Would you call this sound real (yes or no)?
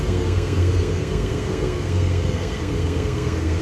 no